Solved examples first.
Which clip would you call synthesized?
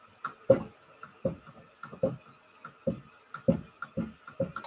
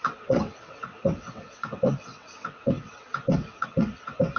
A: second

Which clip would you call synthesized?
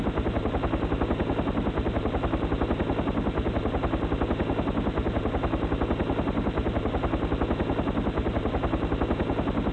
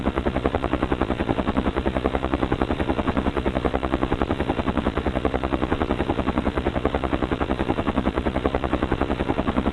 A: second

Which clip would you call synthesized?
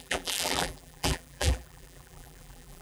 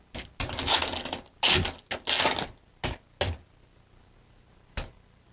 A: first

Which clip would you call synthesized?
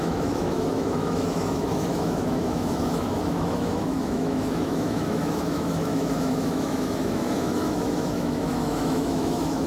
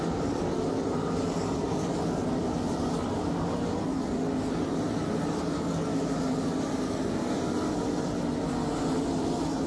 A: first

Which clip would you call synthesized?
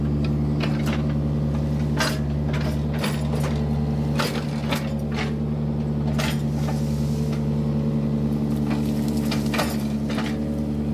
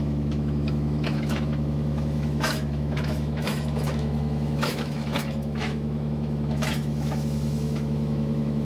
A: second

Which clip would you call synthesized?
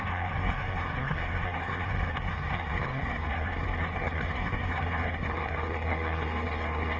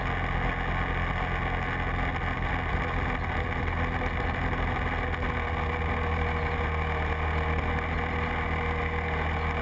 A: first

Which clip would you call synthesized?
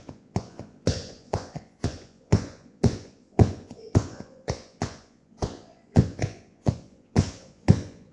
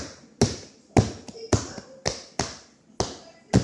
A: first